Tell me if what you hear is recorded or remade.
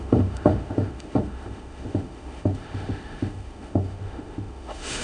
remade